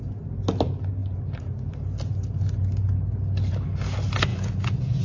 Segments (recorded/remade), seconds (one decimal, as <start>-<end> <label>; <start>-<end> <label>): 0.0-4.3 recorded; 4.3-5.0 remade

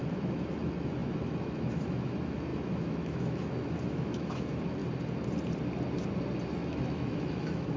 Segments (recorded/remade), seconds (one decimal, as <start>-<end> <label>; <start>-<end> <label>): 0.0-4.8 remade; 4.8-6.5 recorded; 6.5-7.8 remade

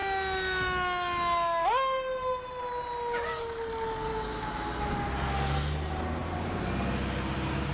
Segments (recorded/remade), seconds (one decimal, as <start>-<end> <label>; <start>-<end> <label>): 0.0-7.7 recorded